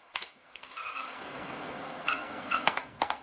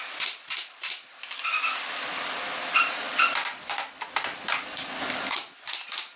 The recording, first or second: second